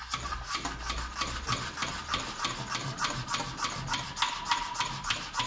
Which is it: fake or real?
real